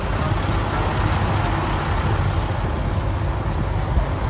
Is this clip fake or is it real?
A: real